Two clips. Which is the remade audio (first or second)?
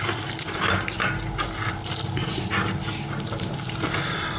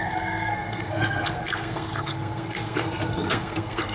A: second